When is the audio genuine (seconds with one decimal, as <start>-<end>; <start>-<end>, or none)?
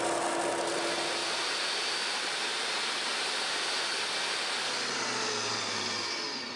0.0-6.6